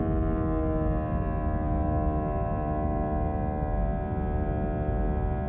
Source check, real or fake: real